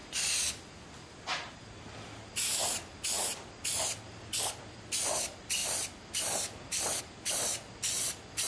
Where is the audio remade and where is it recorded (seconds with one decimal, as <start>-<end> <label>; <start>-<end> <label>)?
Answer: 0.0-8.5 recorded